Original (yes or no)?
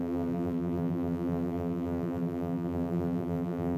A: no